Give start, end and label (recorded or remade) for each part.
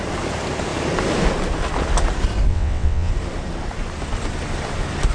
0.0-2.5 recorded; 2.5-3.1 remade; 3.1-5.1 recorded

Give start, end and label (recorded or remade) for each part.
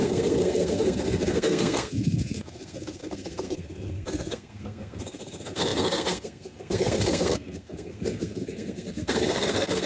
0.0-9.9 remade